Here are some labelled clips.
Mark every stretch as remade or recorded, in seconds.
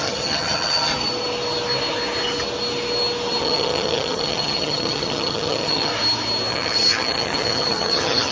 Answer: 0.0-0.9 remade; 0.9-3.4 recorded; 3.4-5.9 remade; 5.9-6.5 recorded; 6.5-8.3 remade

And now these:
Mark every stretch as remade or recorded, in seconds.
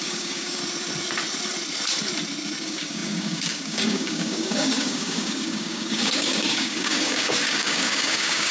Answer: 0.0-0.6 remade; 0.6-2.6 recorded; 2.6-8.5 remade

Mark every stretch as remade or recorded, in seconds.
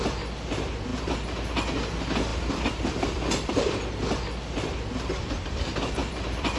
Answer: 0.0-2.3 recorded; 2.3-6.6 remade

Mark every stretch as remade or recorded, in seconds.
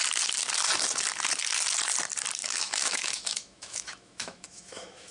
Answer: 0.0-2.4 recorded; 2.4-5.1 remade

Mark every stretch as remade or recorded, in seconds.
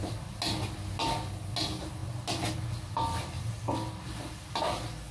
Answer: 0.0-5.1 recorded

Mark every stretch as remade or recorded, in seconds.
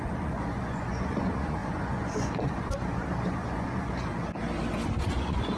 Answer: 0.0-4.1 remade; 4.1-5.0 recorded; 5.0-5.6 remade